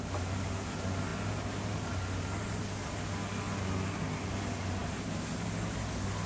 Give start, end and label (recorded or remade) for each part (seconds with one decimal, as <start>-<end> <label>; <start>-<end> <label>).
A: 0.0-6.3 recorded